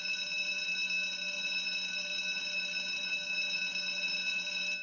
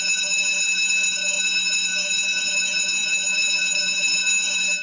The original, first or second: first